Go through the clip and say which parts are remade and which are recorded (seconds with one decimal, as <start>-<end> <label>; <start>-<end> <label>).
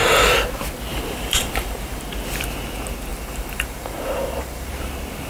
0.0-0.5 remade; 0.5-0.9 recorded; 0.9-2.0 remade; 2.0-3.1 recorded; 3.1-4.7 remade; 4.7-5.3 recorded